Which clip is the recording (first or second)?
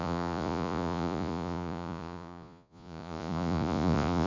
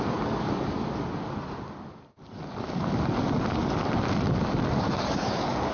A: second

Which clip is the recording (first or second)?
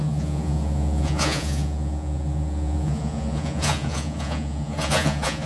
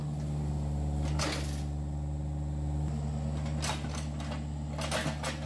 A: second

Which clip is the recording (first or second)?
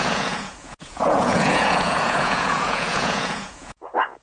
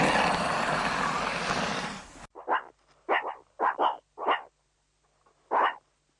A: second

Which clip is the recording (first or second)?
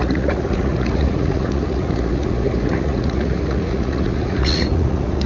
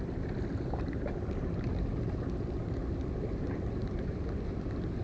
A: second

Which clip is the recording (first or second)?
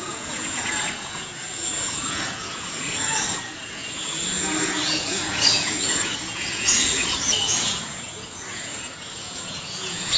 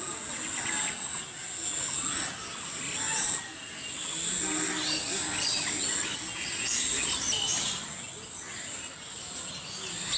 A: second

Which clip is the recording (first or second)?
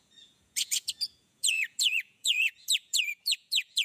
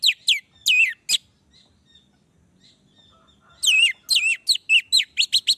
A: second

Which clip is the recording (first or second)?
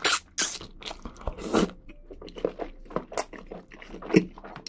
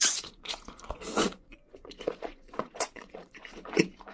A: first